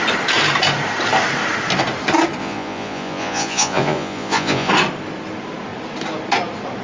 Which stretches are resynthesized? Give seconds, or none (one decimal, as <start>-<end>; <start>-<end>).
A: 2.4-4.7